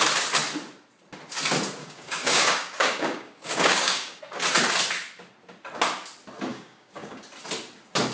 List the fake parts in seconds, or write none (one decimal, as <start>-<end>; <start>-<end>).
1.8-4.2; 6.5-7.2